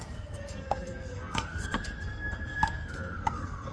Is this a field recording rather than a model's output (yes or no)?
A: no